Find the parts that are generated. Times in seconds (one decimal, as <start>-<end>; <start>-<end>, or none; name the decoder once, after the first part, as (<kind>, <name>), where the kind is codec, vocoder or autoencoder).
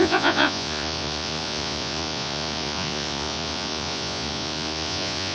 0.0-5.3 (vocoder, Vocos)